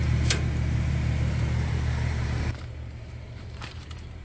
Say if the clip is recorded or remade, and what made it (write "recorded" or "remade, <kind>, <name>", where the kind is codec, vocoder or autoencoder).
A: remade, vocoder, BigVGAN v2